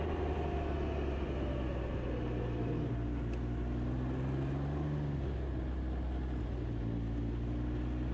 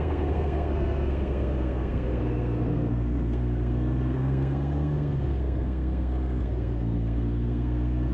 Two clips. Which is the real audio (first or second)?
first